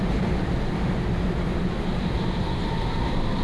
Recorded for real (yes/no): yes